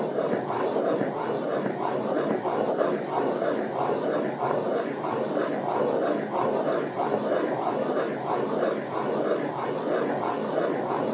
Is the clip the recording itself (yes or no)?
yes